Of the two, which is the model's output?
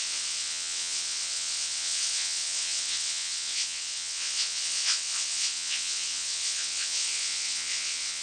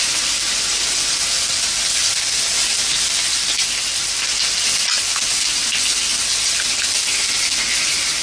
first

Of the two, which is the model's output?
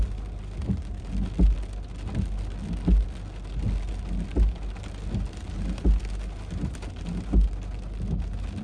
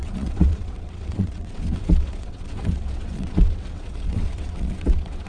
second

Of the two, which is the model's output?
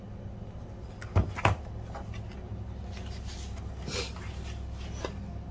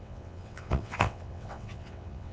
second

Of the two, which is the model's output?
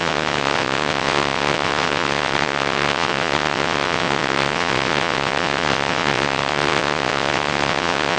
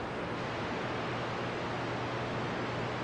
first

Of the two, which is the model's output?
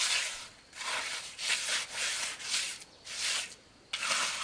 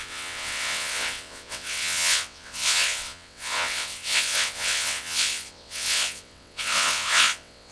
second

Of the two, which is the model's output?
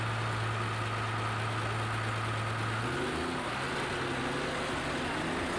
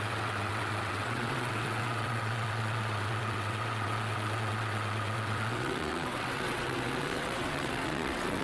second